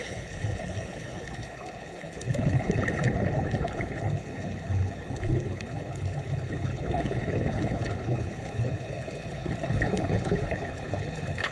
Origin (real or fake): fake